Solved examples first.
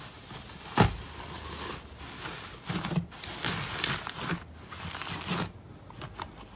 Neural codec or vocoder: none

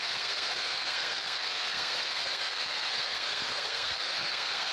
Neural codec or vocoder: codec, SNAC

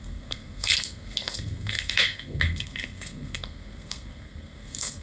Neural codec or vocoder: codec, SNAC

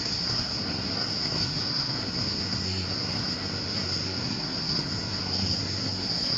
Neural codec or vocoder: codec, SNAC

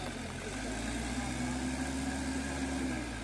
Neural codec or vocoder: none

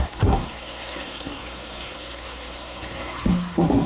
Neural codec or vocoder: codec, SNAC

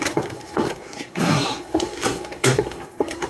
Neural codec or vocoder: codec, SNAC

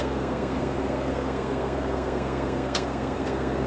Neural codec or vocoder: codec, SNAC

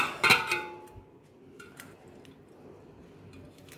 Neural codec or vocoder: none